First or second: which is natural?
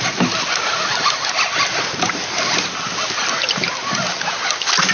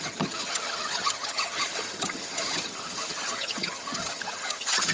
first